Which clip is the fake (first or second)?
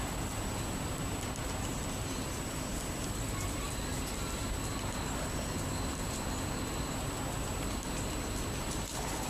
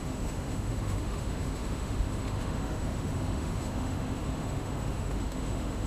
second